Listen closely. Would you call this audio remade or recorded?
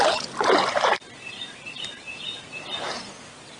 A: recorded